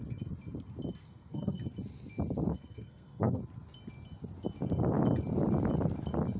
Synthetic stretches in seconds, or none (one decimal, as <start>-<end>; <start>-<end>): 1.0-1.6; 2.5-3.4